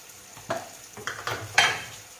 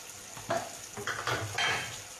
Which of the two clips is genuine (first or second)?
second